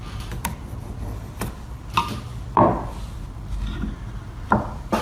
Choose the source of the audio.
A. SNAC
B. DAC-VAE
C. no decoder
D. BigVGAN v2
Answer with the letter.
C